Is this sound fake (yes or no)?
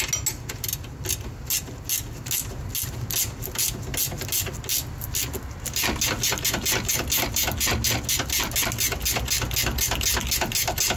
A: no